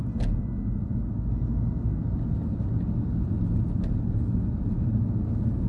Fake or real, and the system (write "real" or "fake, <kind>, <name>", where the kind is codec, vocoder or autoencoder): real